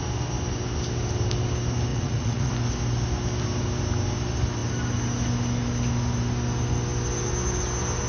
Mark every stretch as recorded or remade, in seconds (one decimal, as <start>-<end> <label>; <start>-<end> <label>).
0.0-1.9 recorded; 1.9-2.5 remade; 2.5-8.1 recorded